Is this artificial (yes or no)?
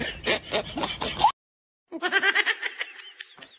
no